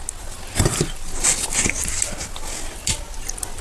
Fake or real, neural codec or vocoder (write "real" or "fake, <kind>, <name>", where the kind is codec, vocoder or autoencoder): real